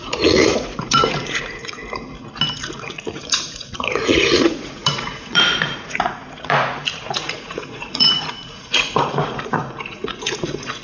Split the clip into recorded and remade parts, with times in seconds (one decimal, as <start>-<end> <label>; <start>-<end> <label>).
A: 0.0-1.8 remade; 1.8-2.6 recorded; 2.6-10.8 remade